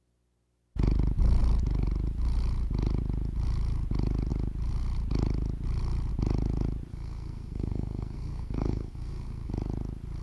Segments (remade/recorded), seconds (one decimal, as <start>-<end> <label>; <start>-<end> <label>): 0.0-6.9 recorded; 6.9-9.5 remade; 9.5-10.2 recorded